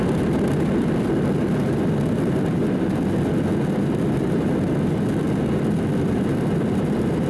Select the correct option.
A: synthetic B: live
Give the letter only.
B